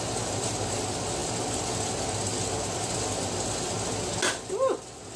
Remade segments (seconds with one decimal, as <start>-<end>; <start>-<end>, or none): none